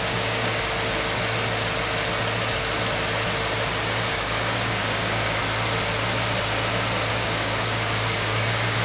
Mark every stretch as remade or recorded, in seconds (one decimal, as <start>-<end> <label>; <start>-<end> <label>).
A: 0.0-0.5 remade; 0.5-4.1 recorded; 4.1-5.4 remade; 5.4-7.1 recorded; 7.1-8.8 remade